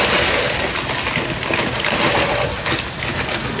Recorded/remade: recorded